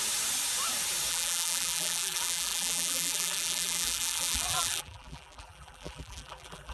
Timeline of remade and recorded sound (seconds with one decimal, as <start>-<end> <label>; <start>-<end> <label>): 0.0-1.1 recorded; 1.1-6.7 remade